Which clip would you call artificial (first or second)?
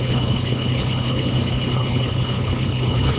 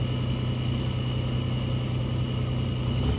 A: first